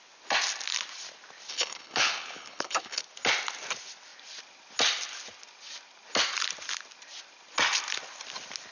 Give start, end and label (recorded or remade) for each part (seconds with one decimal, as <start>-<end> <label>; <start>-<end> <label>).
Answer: 0.0-1.5 recorded; 1.5-3.0 remade; 3.0-8.7 recorded